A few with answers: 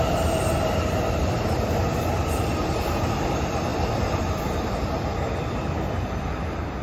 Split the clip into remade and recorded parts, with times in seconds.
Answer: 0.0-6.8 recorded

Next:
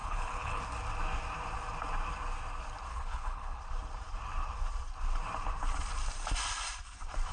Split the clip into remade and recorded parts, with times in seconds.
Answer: 0.0-0.6 remade; 0.6-2.9 recorded; 2.9-3.6 remade; 3.6-7.3 recorded

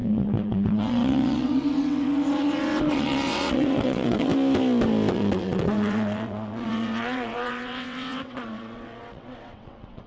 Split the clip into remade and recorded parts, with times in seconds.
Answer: 0.0-4.3 remade; 4.3-5.1 recorded; 5.1-10.1 remade

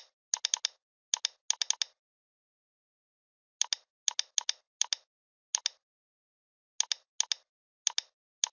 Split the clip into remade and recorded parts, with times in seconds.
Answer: 0.0-8.5 recorded

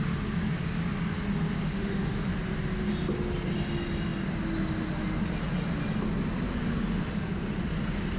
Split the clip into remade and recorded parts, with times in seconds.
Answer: 0.0-1.6 recorded; 1.6-2.3 remade; 2.3-8.2 recorded

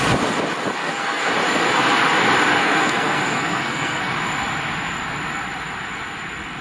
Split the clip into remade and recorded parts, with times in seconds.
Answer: 0.0-0.8 recorded; 0.8-1.3 remade; 1.3-2.6 recorded; 2.6-4.0 remade; 4.0-6.6 recorded

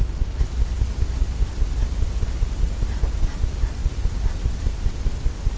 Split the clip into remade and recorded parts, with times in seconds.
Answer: 0.0-3.8 recorded; 3.8-5.6 remade

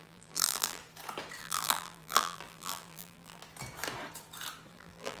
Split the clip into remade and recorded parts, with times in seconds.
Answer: 0.0-0.8 remade; 0.8-1.4 recorded; 1.4-3.4 remade; 3.4-4.7 recorded; 4.7-5.2 remade